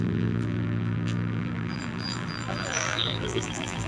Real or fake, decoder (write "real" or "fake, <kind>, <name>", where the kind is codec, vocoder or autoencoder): fake, vocoder, BigVGAN v2